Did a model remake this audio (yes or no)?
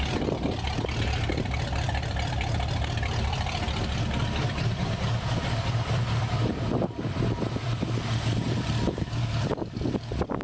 yes